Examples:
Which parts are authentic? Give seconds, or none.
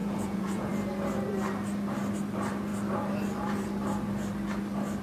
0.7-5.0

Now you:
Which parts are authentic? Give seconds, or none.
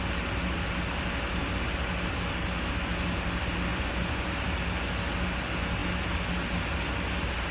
0.0-3.7; 4.3-7.5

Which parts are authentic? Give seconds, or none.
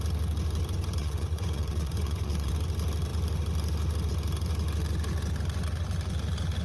0.0-1.0; 2.5-6.6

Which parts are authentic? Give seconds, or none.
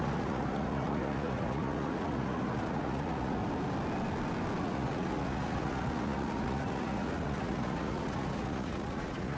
3.4-4.6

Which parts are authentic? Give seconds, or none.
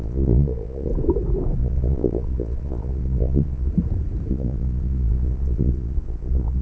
0.9-1.6; 3.7-4.3